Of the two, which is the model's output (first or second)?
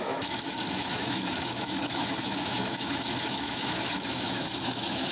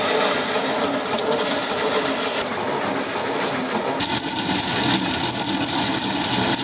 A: first